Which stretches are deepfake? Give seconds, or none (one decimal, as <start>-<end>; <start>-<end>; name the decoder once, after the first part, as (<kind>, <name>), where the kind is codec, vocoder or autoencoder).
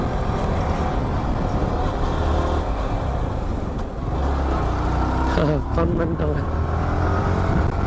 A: none